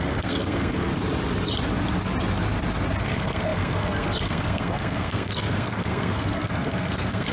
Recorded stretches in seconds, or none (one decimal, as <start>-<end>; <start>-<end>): 0.9-3.0